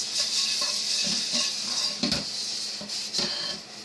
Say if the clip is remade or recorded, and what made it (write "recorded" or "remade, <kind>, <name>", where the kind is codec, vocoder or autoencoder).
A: recorded